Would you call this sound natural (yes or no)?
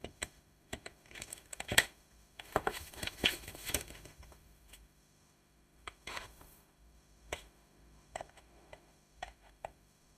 no